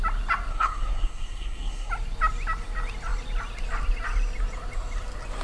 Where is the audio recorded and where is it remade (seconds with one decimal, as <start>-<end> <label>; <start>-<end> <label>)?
0.0-0.5 recorded; 0.5-1.9 remade; 1.9-5.4 recorded